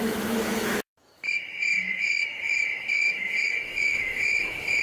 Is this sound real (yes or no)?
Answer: no